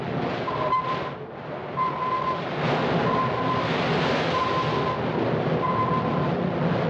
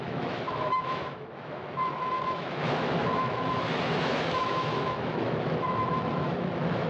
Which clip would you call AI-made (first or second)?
second